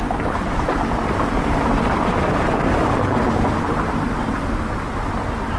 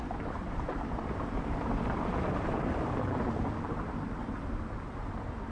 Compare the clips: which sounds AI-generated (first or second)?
second